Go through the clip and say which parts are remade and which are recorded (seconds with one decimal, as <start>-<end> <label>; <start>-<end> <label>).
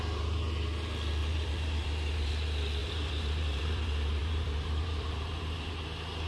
0.0-1.2 recorded; 1.2-2.3 remade; 2.3-2.8 recorded; 2.8-5.7 remade; 5.7-6.3 recorded